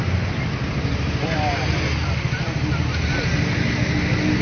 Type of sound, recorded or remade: recorded